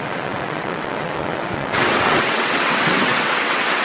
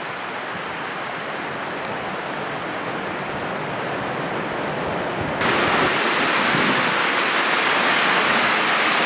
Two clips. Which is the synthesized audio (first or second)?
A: first